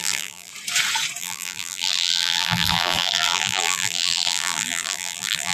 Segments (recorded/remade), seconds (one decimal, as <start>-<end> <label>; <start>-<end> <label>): 0.0-0.5 remade; 0.5-1.2 recorded; 1.2-5.5 remade